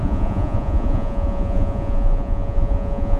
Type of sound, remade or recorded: remade